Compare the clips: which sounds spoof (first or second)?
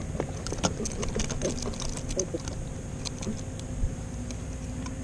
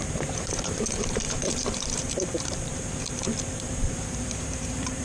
second